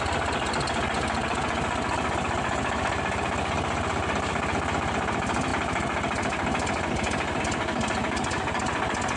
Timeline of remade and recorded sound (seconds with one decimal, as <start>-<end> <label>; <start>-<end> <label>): 0.0-9.2 recorded